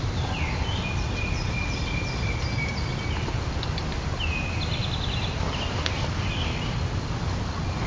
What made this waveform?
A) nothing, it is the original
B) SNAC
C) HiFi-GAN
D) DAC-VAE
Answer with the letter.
A